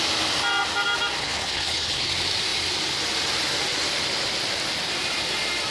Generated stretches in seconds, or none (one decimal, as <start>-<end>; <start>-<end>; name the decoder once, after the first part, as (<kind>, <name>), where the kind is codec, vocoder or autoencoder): 1.2-2.1 (codec, HILCodec)